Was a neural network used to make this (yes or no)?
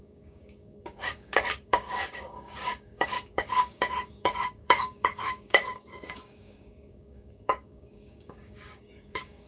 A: yes